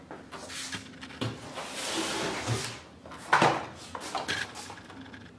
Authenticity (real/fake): real